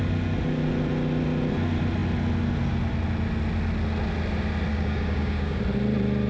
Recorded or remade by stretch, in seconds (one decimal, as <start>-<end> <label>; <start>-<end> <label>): 0.0-4.7 recorded; 4.7-5.6 remade; 5.6-6.3 recorded